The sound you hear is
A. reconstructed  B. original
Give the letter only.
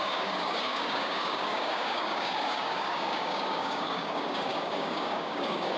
A